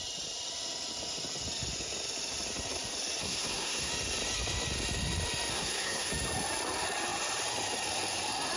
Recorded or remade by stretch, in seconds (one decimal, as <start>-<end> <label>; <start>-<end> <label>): 0.0-3.2 recorded; 3.2-3.9 remade; 3.9-5.5 recorded; 5.5-6.1 remade; 6.1-8.6 recorded

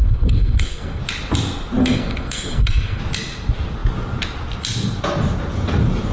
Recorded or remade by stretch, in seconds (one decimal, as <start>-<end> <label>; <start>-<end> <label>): 0.0-1.0 remade; 1.0-1.8 recorded; 1.8-3.0 remade; 3.0-6.1 recorded

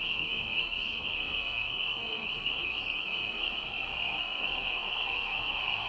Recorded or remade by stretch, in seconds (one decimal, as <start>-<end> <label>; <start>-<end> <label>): 0.0-5.9 remade

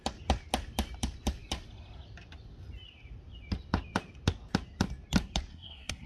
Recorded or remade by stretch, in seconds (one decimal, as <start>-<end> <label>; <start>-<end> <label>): 0.0-5.5 recorded; 5.5-6.1 remade

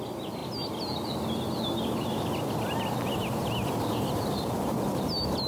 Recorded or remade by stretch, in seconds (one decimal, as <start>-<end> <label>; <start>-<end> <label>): 0.0-5.5 recorded